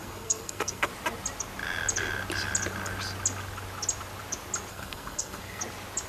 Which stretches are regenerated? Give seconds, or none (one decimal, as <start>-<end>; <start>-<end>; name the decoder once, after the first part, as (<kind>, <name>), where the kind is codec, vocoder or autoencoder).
0.0-0.9 (codec, SNAC); 4.7-5.6